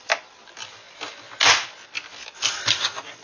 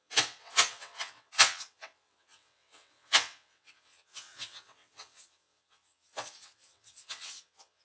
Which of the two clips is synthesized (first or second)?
second